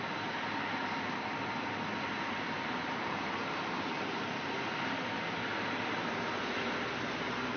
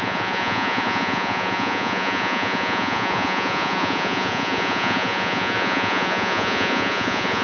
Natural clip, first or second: first